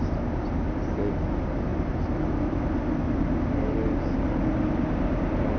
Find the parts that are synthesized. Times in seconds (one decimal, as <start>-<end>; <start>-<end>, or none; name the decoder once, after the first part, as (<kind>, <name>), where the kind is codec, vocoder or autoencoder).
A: none